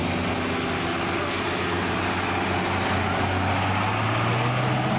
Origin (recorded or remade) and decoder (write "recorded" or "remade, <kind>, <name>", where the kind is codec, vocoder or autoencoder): recorded